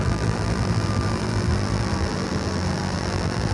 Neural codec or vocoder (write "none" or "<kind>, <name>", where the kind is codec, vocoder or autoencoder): vocoder, BigVGAN v2